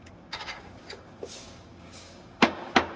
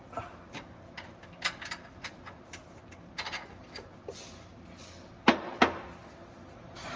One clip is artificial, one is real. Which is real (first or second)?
second